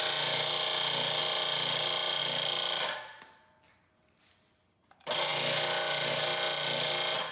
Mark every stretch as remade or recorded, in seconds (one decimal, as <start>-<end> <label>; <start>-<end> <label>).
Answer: 0.0-7.3 recorded